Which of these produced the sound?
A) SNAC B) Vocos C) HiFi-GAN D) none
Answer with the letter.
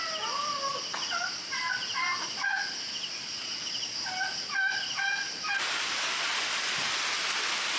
D